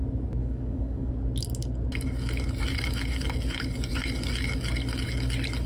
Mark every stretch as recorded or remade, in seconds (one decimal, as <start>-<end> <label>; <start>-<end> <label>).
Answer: 0.0-0.4 recorded; 0.4-1.1 remade; 1.1-5.7 recorded